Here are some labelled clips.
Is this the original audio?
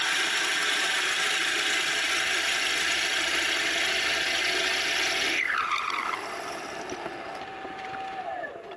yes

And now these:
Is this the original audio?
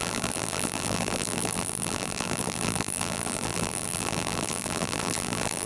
no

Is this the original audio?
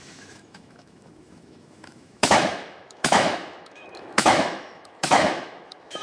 no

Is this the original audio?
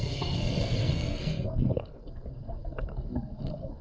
no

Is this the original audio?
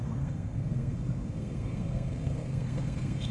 no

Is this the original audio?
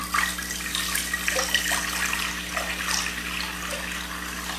yes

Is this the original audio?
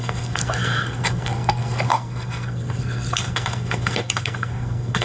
no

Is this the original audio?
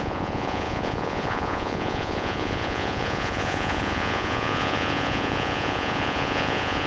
no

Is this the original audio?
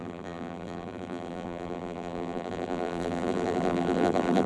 no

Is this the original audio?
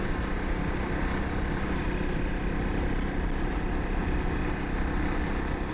yes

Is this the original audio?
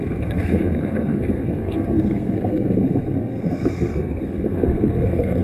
no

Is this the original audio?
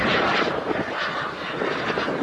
no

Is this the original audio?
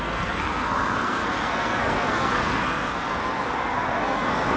no